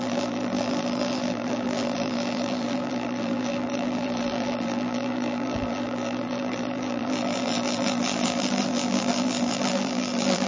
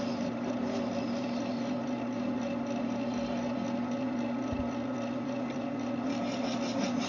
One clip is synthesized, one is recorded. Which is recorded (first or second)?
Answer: second